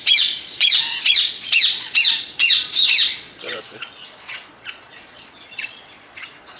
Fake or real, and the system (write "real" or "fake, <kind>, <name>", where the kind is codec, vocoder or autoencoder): fake, vocoder, Vocos